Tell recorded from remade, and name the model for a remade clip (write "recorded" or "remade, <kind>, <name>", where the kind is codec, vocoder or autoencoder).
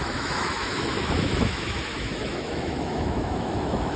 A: remade, autoencoder, DAC-VAE